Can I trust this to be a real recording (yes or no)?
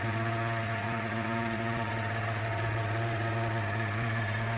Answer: no